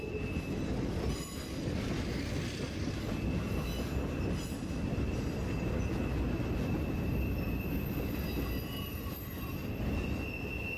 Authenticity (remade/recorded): recorded